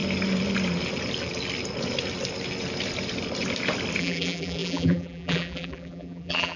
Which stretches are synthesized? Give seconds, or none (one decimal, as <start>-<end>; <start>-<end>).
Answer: 4.0-6.6